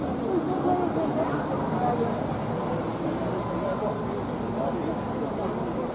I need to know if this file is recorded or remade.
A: recorded